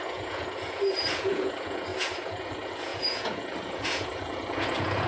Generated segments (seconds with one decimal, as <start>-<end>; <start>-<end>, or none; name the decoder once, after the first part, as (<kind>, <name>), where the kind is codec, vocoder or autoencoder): 0.0-5.1 (vocoder, Vocos)